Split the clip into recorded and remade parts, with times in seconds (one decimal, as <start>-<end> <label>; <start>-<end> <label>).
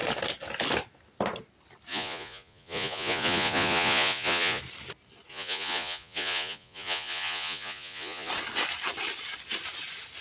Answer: 0.0-1.9 recorded; 1.9-4.6 remade; 4.6-5.3 recorded; 5.3-8.3 remade; 8.3-10.2 recorded